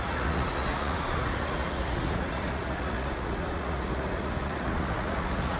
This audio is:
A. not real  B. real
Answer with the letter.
A